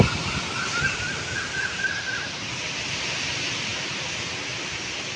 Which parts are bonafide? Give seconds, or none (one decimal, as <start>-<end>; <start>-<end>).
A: 0.0-5.2